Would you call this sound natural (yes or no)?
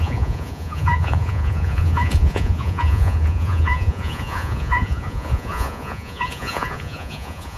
no